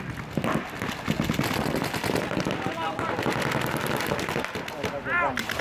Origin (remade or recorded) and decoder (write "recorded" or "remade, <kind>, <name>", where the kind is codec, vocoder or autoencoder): recorded